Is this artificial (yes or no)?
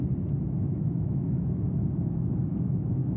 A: yes